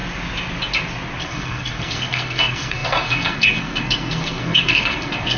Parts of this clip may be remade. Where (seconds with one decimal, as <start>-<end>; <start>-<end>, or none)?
1.2-5.4